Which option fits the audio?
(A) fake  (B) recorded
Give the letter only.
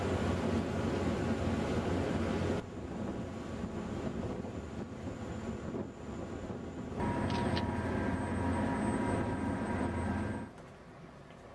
B